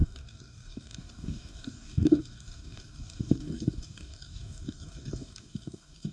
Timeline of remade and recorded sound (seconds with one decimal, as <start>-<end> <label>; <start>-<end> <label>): 0.0-6.1 remade